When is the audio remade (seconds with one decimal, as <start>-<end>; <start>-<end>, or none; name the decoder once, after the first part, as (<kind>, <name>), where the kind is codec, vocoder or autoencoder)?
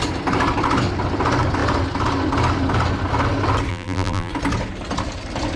3.7-4.3 (vocoder, BigVGAN v2)